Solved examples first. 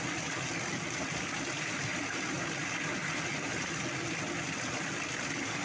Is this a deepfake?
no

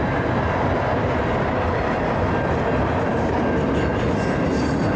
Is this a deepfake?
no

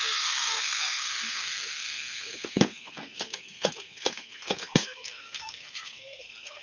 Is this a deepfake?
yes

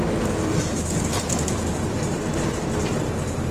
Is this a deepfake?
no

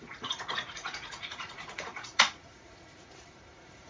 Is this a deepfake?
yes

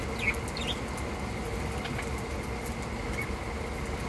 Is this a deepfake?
no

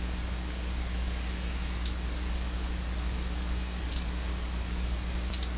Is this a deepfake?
yes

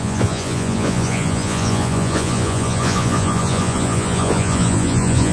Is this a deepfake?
yes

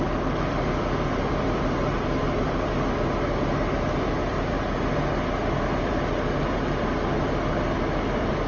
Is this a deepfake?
no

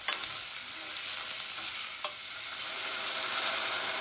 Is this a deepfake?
no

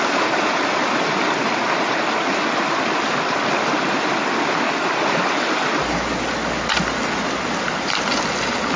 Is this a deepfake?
no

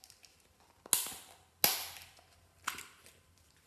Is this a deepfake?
no